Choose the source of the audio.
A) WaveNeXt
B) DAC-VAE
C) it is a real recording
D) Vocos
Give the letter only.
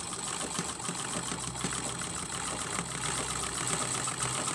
C